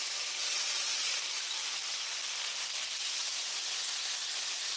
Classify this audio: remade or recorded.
recorded